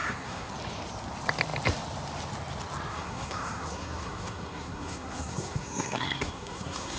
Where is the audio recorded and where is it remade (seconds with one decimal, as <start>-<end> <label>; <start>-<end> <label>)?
0.0-0.5 remade; 0.5-2.9 recorded; 2.9-7.0 remade